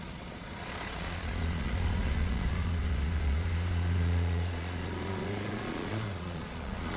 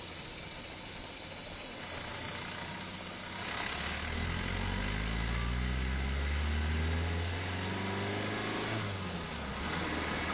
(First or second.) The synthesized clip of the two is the first